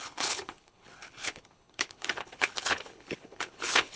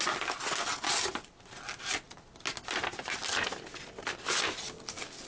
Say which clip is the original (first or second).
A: second